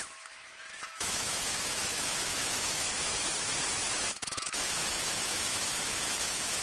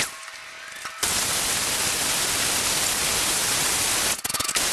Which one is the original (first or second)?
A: second